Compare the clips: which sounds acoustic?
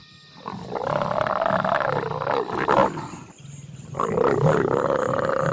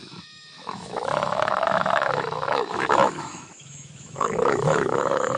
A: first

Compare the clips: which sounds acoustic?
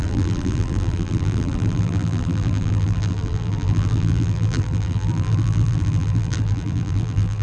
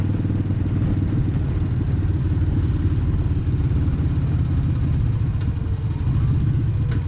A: second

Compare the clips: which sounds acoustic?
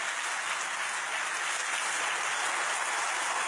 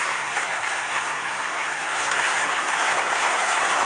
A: first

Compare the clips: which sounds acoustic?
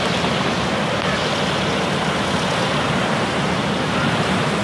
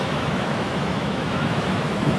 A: first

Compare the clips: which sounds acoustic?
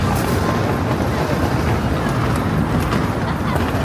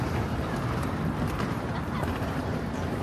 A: first